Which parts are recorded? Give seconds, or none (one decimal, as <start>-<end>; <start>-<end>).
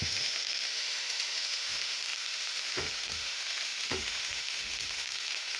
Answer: none